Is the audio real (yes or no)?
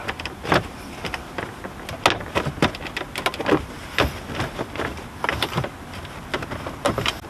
yes